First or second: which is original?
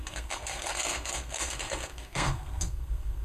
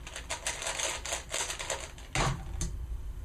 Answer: second